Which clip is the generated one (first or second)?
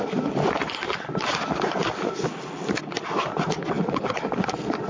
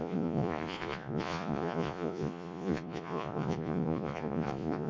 second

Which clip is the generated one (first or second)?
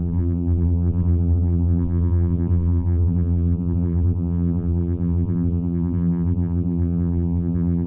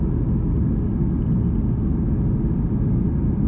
first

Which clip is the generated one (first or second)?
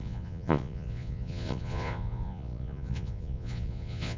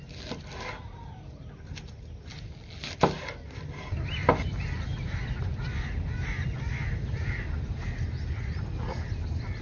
first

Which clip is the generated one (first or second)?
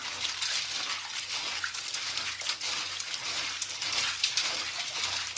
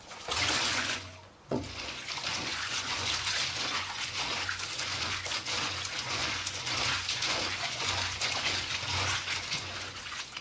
second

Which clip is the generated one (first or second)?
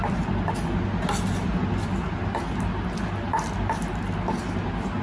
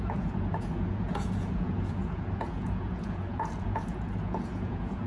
second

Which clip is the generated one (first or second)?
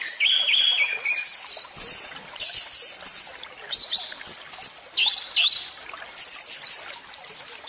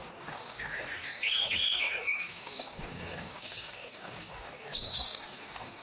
second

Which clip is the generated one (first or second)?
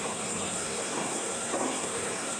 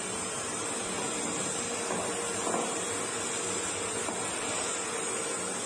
first